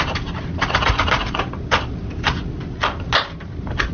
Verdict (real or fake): real